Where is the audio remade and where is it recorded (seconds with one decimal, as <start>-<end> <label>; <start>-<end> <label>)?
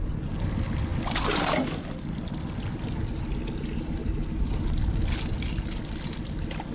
0.0-6.7 recorded